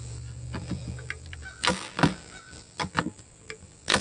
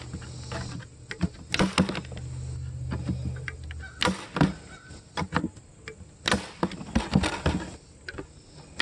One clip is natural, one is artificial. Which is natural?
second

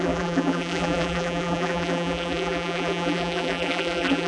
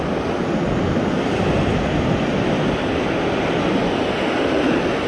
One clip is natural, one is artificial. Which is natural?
second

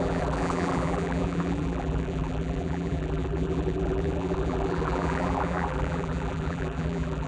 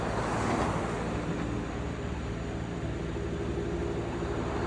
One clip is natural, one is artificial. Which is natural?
second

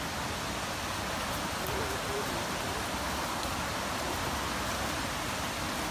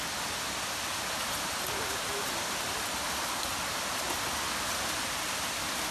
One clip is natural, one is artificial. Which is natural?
first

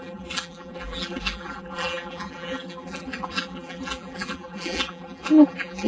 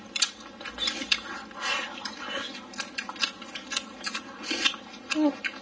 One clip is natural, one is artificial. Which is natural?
second